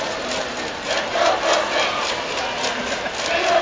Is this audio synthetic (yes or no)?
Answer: no